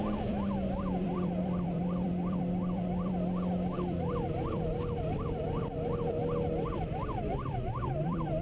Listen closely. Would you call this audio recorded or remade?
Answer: remade